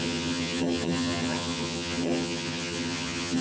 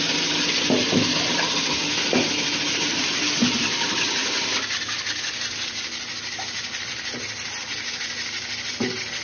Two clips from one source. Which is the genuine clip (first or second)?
second